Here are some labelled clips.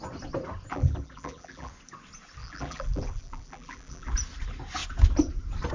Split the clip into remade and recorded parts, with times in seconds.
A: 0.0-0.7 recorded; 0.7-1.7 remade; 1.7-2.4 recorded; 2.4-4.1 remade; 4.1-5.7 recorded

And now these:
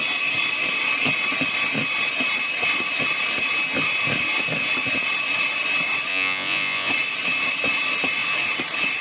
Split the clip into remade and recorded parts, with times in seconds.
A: 0.0-6.1 recorded; 6.1-6.9 remade; 6.9-9.0 recorded

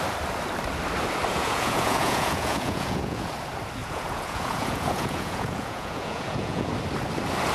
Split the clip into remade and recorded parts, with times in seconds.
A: 0.0-1.3 recorded; 1.3-3.3 remade; 3.3-3.8 recorded; 3.8-6.7 remade; 6.7-7.5 recorded

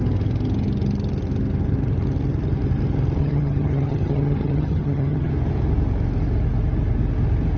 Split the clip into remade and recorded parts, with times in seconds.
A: 0.0-3.2 recorded; 3.2-5.3 remade; 5.3-7.6 recorded

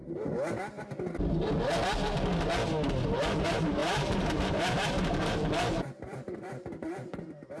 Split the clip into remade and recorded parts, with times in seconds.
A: 0.0-3.4 recorded; 3.4-7.6 remade

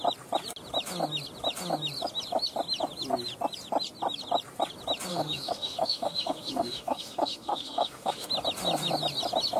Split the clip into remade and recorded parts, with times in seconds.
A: 0.0-5.1 recorded; 5.1-8.3 remade; 8.3-9.6 recorded

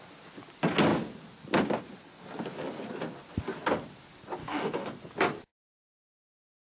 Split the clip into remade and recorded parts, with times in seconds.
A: 0.0-4.4 recorded; 4.4-5.0 remade; 5.0-6.8 recorded